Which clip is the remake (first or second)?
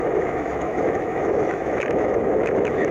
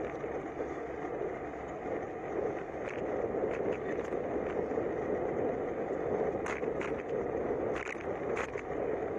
first